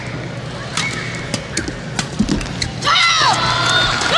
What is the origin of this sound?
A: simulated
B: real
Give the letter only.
B